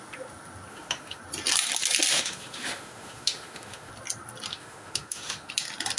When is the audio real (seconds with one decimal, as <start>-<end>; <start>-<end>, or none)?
0.0-0.7; 1.2-2.1; 3.9-4.5; 5.5-6.0